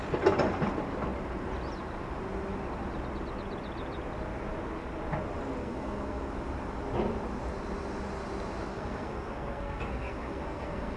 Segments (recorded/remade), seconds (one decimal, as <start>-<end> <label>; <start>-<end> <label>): 0.0-5.6 recorded; 5.6-6.3 remade; 6.3-8.7 recorded; 8.7-11.0 remade